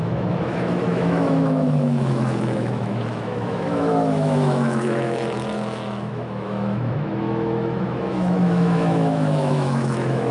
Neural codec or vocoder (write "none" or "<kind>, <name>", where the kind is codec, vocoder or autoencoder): autoencoder, DAC-VAE